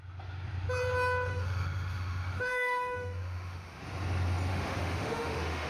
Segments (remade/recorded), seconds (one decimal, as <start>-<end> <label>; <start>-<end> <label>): 0.0-1.3 recorded; 1.3-3.8 remade; 3.8-4.5 recorded; 4.5-5.7 remade